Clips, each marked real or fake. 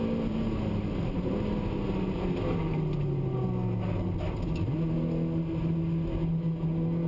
real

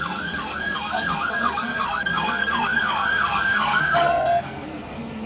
fake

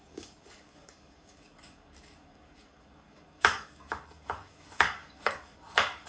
fake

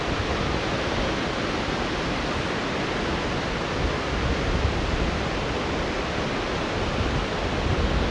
real